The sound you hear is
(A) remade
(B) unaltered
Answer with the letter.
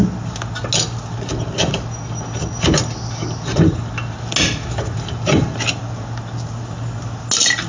B